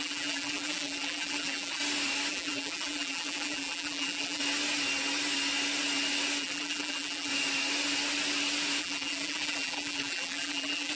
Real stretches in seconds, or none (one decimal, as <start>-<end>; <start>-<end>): 1.8-2.3; 4.4-6.4; 7.3-8.8